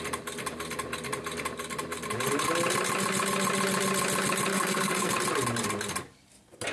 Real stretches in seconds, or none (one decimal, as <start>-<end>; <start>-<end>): 0.0-4.5; 5.1-6.7